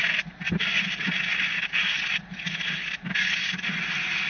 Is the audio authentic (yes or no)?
yes